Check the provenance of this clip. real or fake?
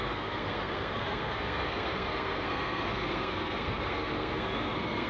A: fake